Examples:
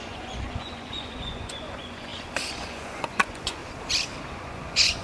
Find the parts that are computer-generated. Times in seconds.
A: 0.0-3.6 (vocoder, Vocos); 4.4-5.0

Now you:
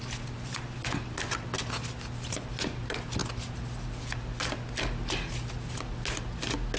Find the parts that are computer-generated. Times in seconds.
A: none

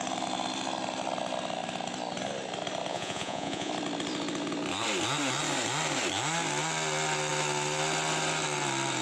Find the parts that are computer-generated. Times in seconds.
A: 2.9-3.7 (vocoder, Vocos)

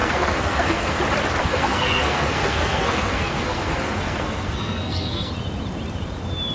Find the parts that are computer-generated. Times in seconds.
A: 0.0-1.0 (codec, SNAC); 1.4-5.3